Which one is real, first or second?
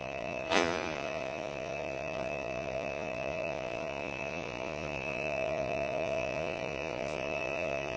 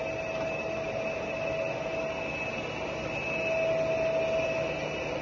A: second